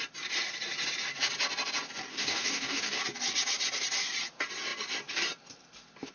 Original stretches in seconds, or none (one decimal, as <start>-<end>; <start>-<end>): 0.0-2.1; 3.0-6.1